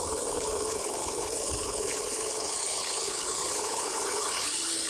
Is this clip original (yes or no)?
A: no